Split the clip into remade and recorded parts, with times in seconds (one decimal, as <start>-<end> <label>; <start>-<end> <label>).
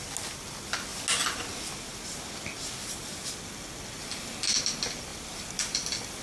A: 0.0-5.1 recorded; 5.1-6.2 remade